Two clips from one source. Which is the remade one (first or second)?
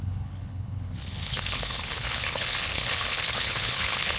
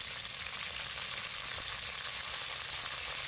first